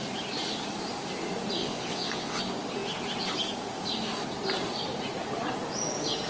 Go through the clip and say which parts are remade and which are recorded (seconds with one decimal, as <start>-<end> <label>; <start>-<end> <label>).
0.0-1.6 recorded; 1.6-2.4 remade; 2.4-6.3 recorded